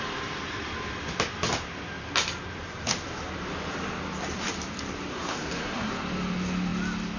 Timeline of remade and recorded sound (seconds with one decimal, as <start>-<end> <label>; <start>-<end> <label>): 0.0-5.1 recorded; 5.1-5.9 remade; 5.9-7.2 recorded